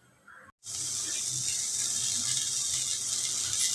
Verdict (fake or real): real